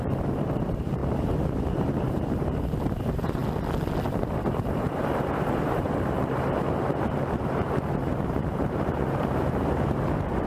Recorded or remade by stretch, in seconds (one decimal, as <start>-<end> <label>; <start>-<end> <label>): 0.0-3.4 remade; 3.4-4.1 recorded; 4.1-10.5 remade